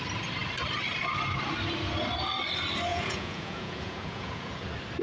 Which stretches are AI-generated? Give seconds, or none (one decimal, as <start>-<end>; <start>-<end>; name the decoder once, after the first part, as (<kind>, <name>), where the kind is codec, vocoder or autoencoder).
2.9-4.5 (vocoder, Vocos)